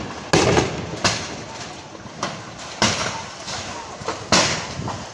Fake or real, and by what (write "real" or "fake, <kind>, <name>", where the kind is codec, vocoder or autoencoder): real